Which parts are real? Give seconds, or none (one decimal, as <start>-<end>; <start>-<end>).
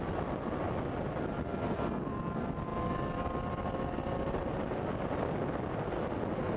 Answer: 0.0-6.6